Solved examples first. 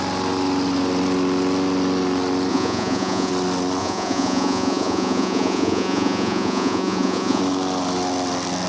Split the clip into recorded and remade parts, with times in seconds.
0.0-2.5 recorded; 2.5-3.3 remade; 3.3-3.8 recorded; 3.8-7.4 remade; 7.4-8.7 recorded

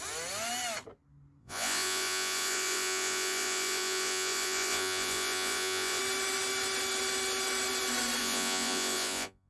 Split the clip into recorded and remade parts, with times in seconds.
0.0-1.4 recorded; 1.4-6.0 remade; 6.0-8.2 recorded; 8.2-9.5 remade

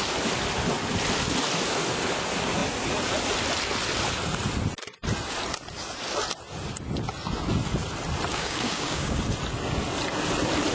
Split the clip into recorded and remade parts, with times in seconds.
0.0-8.3 recorded; 8.3-9.2 remade; 9.2-10.7 recorded